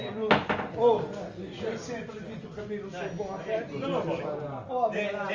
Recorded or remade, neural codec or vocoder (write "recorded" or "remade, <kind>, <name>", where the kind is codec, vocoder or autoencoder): recorded